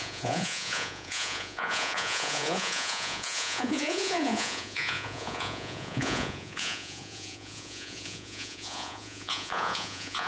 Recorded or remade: remade